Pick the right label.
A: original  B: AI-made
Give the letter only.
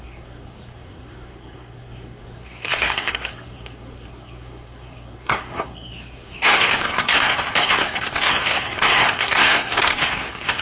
B